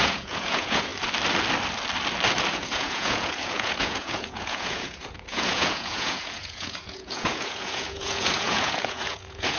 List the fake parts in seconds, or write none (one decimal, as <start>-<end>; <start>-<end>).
0.0-0.9; 2.5-9.6